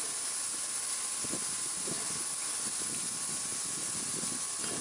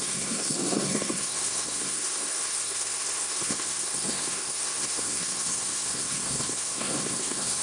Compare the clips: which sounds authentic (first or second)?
first